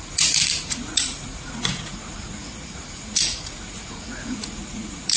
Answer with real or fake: fake